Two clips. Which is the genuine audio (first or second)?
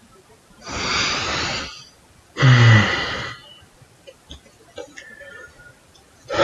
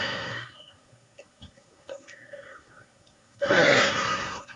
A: first